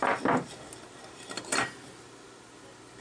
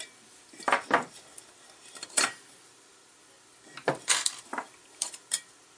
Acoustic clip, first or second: first